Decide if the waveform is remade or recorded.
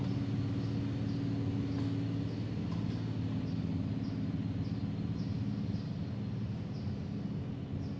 recorded